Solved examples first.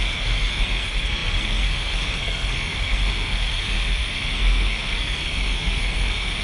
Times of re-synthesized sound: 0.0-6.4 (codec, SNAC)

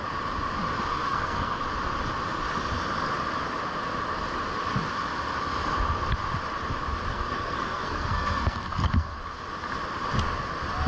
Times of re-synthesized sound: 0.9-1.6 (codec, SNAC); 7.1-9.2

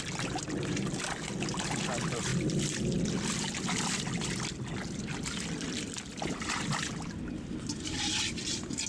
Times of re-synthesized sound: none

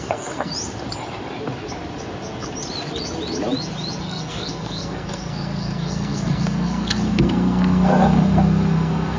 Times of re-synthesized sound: 0.0-0.5 (codec, SNAC); 4.0-9.2

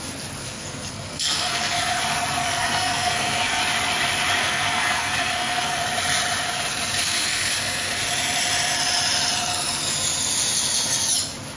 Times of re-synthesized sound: 0.4-2.0 (codec, SNAC); 2.4-3.6; 4.4-5.8; 7.0-8.0

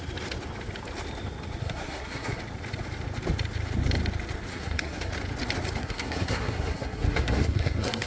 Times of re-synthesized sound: 1.6-2.4 (codec, SNAC); 4.5-5.1; 5.8-8.1

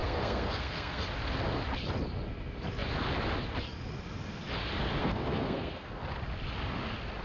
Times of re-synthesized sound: 0.0-1.0 (codec, SNAC); 5.0-6.0

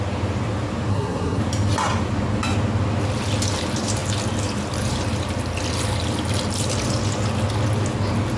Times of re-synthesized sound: 0.9-1.4 (codec, SNAC)